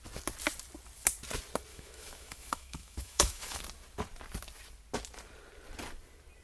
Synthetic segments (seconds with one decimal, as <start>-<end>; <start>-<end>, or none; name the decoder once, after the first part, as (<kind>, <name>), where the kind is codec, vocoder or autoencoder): 1.7-3.6 (autoencoder, DAC-VAE)